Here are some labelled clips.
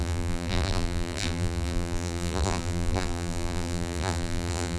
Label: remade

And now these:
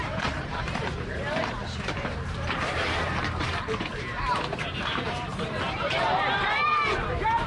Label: remade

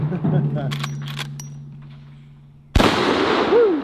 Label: recorded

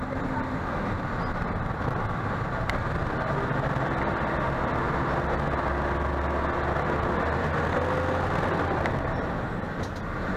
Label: recorded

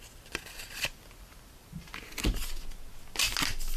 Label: recorded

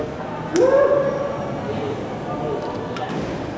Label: recorded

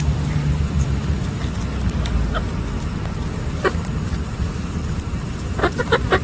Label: remade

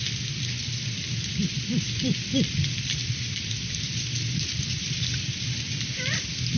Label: remade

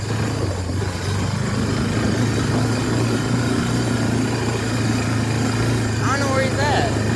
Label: recorded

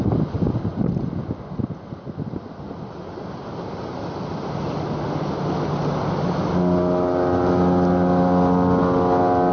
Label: recorded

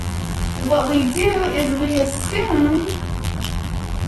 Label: remade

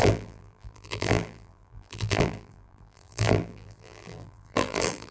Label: remade